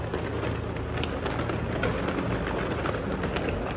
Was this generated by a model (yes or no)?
no